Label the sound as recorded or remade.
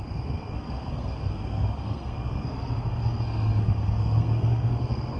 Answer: remade